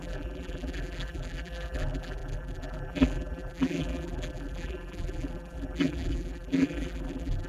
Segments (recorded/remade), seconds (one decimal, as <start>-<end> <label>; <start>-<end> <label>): 0.0-7.5 remade